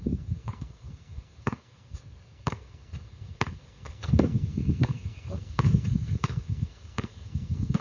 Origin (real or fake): fake